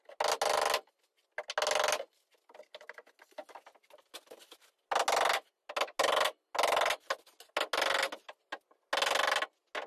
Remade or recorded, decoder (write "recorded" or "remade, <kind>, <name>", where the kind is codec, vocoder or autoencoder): recorded